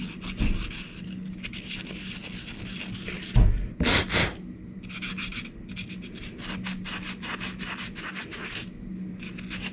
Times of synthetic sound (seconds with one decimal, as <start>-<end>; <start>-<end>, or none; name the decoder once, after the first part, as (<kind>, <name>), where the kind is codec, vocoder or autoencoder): none